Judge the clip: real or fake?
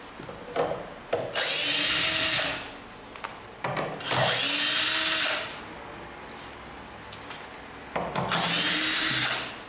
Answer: real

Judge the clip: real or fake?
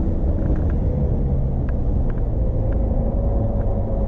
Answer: real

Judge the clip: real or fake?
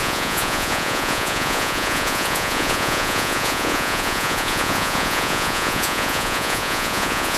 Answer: fake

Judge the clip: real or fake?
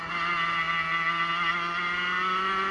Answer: real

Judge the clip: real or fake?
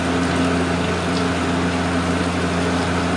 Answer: real